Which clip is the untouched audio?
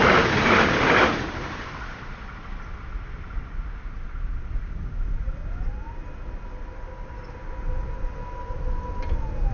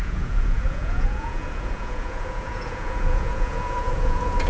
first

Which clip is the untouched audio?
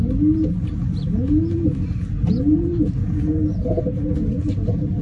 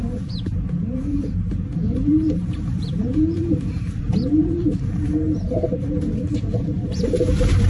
first